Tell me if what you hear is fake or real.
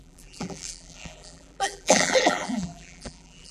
fake